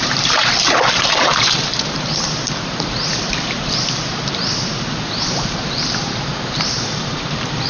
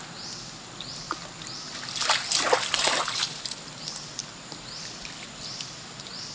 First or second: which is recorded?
second